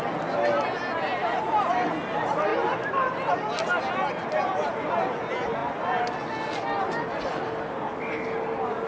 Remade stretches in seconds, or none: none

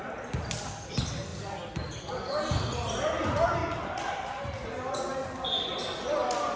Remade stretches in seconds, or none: none

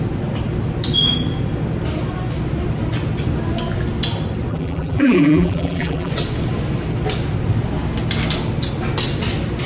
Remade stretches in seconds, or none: 4.5-6.1 (vocoder, BigVGAN v2)

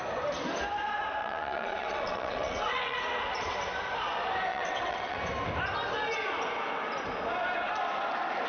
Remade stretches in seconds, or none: 1.2-3.0 (vocoder, WaveNeXt); 4.5-5.2

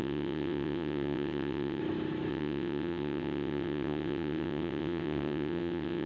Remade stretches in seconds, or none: 0.0-1.8 (vocoder, WaveNeXt); 2.3-6.1

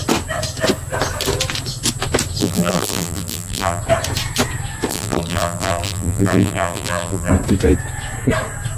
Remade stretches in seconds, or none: 2.4-3.8 (vocoder, BigVGAN v2); 4.9-7.3

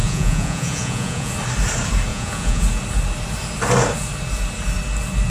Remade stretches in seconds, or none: 0.0-1.3 (vocoder, Vocos); 2.1-2.6

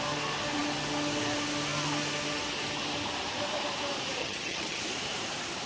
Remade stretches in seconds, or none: 4.2-4.8 (vocoder, HiFi-GAN)